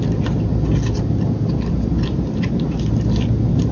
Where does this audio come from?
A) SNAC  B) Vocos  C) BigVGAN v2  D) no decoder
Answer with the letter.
D